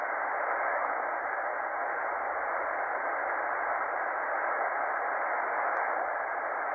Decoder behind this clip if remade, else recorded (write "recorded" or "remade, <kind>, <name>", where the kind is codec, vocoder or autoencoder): recorded